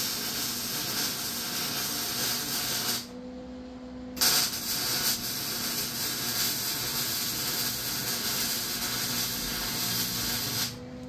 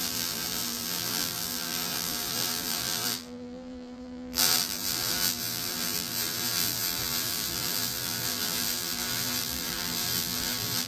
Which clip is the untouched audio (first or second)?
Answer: first